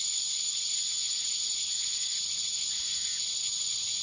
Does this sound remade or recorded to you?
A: recorded